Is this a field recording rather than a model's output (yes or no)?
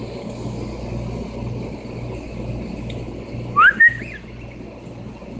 yes